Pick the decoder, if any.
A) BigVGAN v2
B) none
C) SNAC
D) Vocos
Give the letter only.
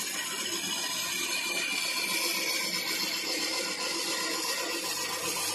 B